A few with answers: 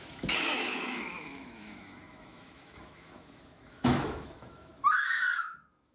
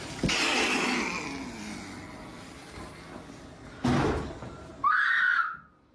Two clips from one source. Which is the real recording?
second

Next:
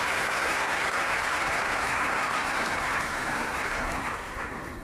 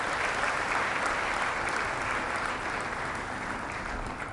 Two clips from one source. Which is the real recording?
second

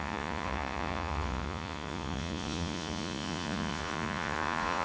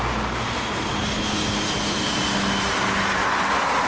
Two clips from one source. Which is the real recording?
second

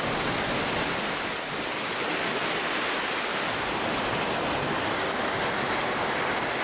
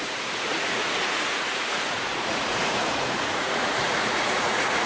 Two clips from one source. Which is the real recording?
first